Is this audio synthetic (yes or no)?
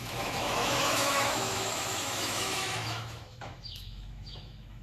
yes